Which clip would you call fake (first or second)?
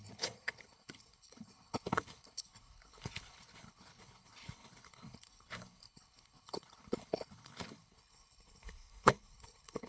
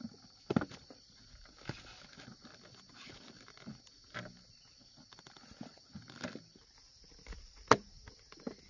first